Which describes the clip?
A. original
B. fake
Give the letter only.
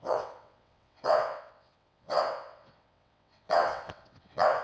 B